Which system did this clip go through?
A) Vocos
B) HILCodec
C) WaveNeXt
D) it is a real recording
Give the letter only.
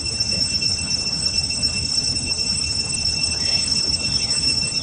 B